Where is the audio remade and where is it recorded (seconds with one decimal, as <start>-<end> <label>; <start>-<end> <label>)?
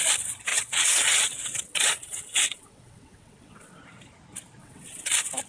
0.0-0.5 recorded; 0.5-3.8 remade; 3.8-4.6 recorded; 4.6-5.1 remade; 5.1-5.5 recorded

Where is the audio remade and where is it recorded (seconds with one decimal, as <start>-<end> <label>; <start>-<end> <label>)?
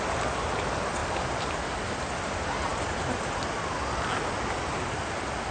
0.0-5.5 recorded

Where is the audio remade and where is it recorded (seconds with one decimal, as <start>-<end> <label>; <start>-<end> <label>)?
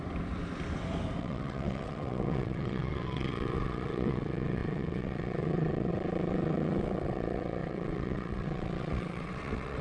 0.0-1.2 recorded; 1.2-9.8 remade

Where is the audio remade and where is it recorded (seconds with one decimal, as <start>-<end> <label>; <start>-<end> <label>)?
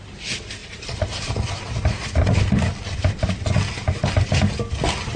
0.0-5.2 recorded